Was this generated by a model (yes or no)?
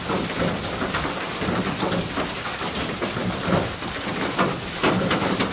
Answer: no